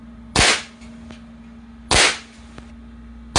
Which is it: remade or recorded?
recorded